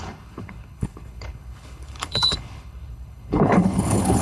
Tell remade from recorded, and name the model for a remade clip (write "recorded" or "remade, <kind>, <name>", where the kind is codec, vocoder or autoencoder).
remade, codec, HILCodec